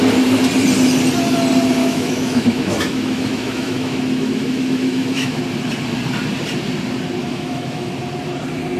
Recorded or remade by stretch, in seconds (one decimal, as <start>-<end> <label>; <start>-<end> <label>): 0.0-1.8 recorded; 1.8-5.4 remade; 5.4-7.2 recorded; 7.2-7.9 remade; 7.9-8.8 recorded